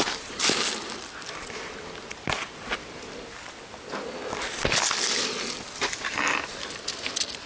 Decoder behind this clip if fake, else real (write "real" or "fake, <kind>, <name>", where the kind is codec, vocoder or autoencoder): real